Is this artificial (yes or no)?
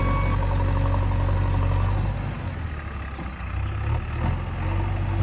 no